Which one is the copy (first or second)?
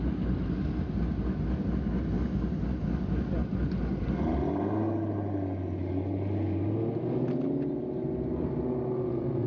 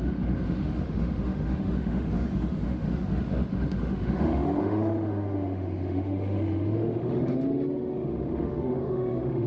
second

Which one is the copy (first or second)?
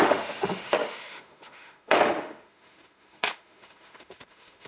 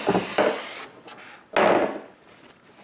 first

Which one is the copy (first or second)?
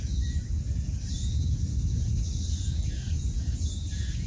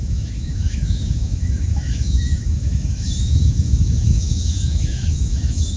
second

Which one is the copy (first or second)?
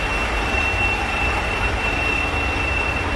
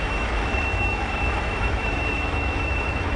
second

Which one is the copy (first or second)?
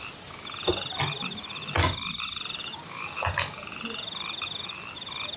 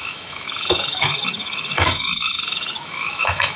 second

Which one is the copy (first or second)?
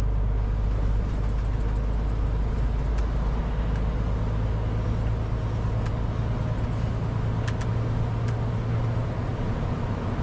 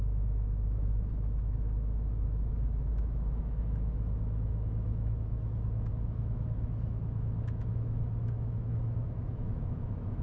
second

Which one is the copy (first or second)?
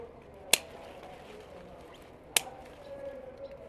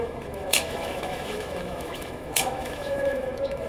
second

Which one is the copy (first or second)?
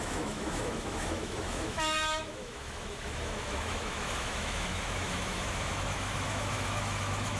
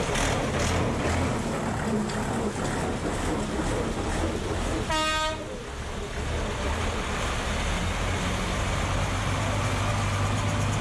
first